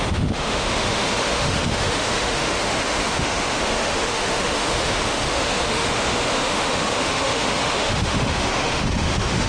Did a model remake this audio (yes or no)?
yes